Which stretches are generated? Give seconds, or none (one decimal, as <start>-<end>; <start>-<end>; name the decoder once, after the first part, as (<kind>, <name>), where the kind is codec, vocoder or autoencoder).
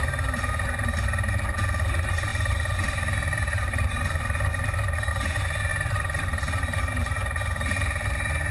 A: 2.3-5.1 (vocoder, BigVGAN v2); 5.7-6.9